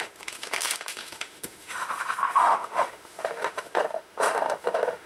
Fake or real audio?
fake